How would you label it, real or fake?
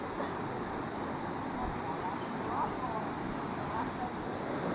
real